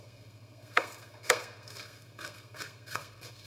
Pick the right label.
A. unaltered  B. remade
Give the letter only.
B